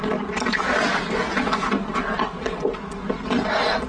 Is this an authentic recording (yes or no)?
yes